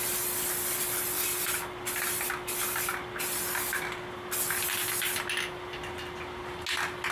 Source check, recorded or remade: recorded